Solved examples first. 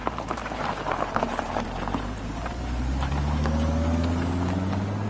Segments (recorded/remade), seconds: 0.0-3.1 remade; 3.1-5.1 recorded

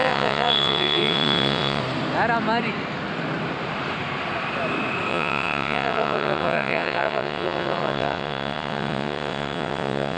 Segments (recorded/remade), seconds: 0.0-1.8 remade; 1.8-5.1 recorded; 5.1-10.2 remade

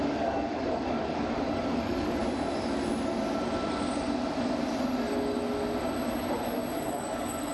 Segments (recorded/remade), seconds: 0.0-2.2 remade; 2.2-6.7 recorded; 6.7-7.5 remade

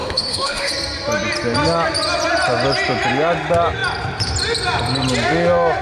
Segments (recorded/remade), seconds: 0.0-0.7 remade; 0.7-5.8 recorded

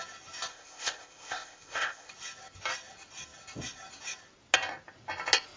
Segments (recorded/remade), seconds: 0.0-0.5 recorded; 0.5-2.1 remade; 2.1-5.6 recorded

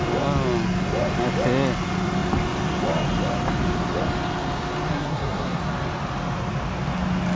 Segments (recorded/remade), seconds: 0.0-4.9 recorded; 4.9-5.6 remade; 5.6-7.4 recorded

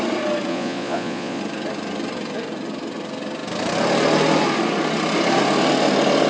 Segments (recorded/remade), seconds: 0.0-0.5 recorded; 0.5-1.4 remade; 1.4-6.3 recorded